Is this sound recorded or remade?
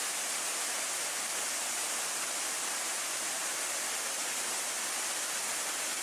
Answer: remade